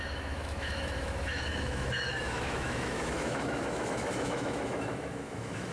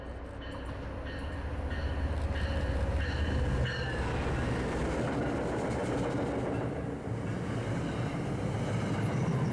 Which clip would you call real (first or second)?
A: second